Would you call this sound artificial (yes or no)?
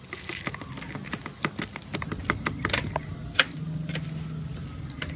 no